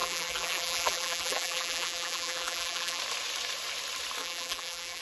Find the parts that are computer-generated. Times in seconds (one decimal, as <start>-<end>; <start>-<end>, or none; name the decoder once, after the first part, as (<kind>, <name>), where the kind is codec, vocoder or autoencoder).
0.0-3.0 (vocoder, BigVGAN v2); 4.2-5.0